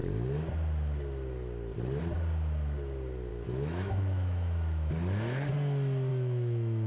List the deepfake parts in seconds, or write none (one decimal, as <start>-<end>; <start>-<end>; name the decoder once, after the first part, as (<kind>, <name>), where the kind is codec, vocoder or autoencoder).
3.3-4.9 (autoencoder, DAC-VAE); 6.1-6.9